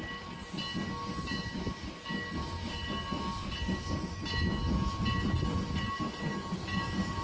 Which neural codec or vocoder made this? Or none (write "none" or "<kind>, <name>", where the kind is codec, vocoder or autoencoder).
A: none